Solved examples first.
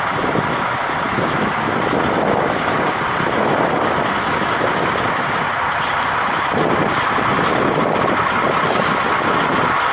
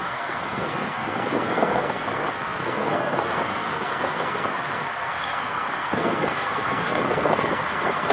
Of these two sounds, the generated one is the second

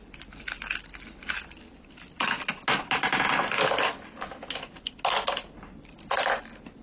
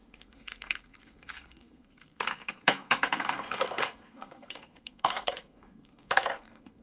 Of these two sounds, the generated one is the second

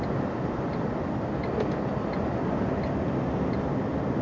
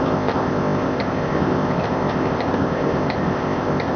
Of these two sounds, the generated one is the second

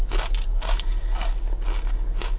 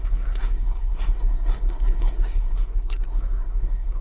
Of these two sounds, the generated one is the second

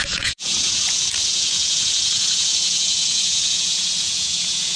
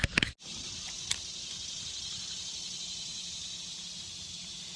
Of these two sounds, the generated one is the first